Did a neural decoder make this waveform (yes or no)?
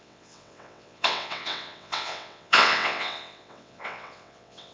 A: yes